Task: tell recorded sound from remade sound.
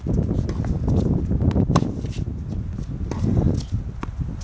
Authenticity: recorded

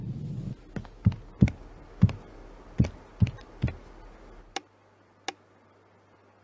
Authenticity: recorded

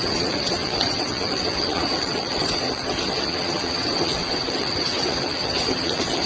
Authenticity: remade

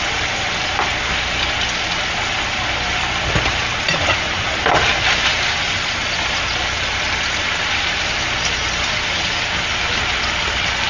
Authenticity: recorded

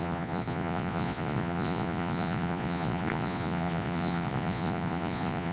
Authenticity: remade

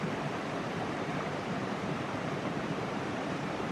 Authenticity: remade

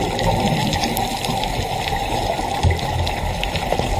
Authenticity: recorded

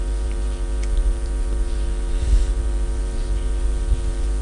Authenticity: remade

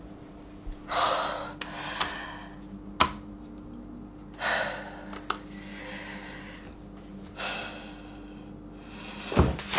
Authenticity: recorded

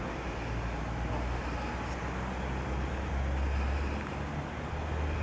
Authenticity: recorded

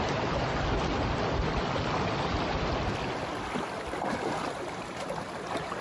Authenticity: recorded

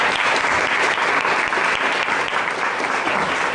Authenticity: recorded